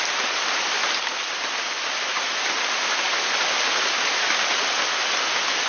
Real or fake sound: real